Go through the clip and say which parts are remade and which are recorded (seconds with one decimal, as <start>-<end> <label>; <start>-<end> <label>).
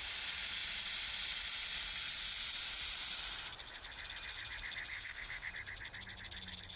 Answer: 0.0-4.9 recorded; 4.9-5.5 remade; 5.5-6.8 recorded